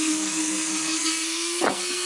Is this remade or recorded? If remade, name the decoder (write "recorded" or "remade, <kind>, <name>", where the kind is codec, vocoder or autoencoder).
remade, codec, SNAC